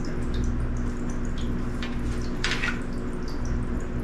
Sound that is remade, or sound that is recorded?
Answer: recorded